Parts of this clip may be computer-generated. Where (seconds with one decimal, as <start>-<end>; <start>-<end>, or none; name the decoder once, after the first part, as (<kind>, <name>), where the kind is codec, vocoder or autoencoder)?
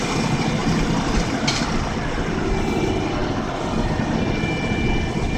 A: none